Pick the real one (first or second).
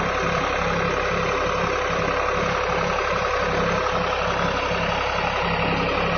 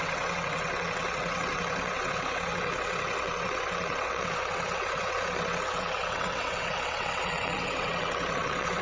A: first